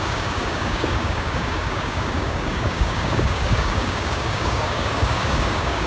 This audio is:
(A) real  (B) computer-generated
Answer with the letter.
B